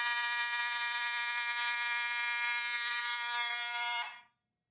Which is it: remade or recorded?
remade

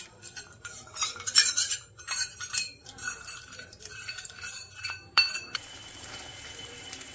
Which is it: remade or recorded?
remade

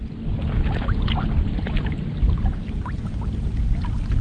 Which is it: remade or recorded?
recorded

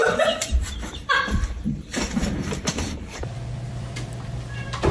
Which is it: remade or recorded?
remade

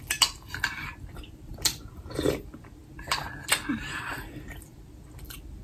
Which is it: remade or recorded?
remade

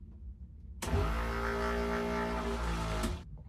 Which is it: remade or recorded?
recorded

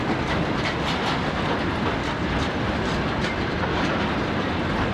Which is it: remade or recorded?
recorded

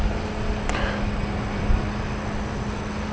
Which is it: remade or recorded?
recorded